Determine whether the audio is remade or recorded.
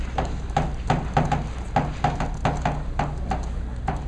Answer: recorded